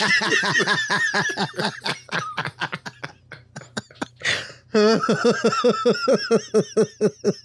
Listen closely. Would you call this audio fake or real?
real